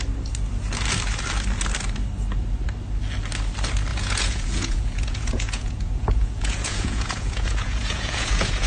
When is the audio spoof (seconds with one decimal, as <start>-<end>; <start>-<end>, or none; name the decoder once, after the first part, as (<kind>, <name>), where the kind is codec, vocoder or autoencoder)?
3.9-8.7 (vocoder, Vocos)